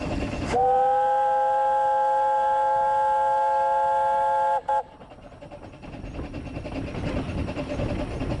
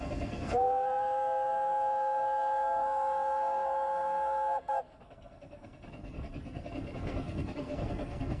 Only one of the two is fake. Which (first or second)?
second